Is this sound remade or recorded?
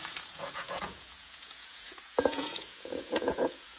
remade